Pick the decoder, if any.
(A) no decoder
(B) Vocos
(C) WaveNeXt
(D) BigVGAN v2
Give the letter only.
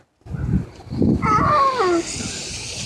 A